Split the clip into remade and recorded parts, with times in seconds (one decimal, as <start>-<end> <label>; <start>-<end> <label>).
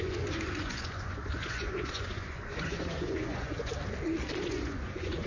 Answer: 0.0-3.7 remade; 3.7-4.4 recorded; 4.4-5.3 remade